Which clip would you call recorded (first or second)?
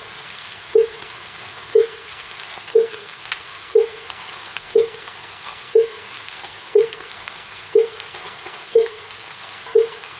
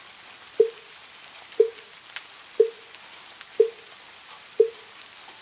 second